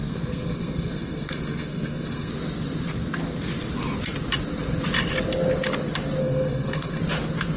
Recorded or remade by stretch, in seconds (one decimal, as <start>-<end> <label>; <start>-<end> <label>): 0.0-2.3 remade; 2.3-6.2 recorded; 6.2-7.0 remade; 7.0-7.6 recorded